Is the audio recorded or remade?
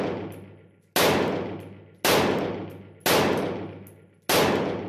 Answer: recorded